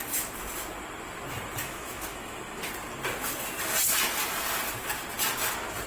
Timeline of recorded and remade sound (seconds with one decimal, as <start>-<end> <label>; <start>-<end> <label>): 0.0-1.6 recorded; 1.6-2.7 remade; 2.7-5.9 recorded